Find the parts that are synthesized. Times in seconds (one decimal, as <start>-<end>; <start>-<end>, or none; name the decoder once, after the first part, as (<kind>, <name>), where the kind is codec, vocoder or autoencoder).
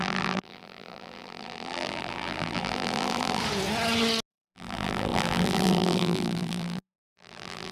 0.0-3.4 (vocoder, BigVGAN v2); 4.3-7.7